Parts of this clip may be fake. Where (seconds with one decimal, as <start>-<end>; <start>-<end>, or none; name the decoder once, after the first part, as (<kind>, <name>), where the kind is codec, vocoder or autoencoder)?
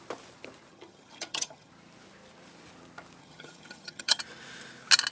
0.7-1.7 (vocoder, HiFi-GAN); 3.2-4.2